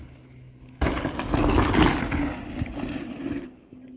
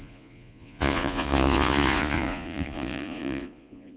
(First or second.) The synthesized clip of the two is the second